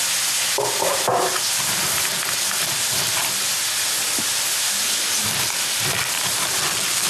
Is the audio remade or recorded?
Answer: recorded